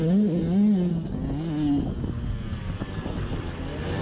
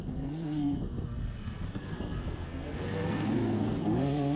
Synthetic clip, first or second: second